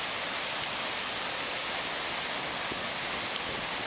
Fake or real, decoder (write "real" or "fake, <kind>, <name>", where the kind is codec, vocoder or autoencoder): real